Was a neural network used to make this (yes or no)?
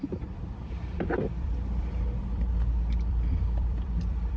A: yes